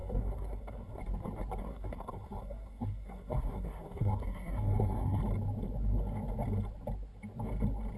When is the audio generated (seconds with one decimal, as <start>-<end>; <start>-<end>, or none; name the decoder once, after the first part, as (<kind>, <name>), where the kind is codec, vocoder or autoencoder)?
0.0-1.0 (codec, SNAC); 1.6-5.2